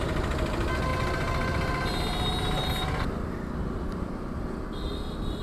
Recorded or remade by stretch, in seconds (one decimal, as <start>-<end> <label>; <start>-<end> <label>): 0.0-5.4 recorded